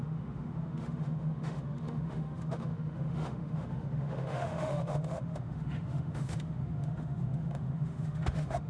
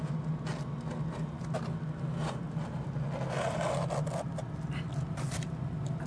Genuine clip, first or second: second